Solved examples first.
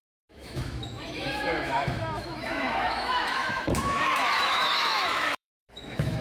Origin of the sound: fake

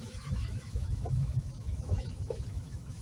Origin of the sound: fake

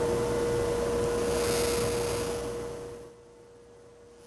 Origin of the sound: real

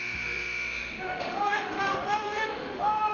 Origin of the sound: fake